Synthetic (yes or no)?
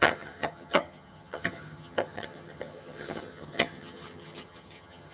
yes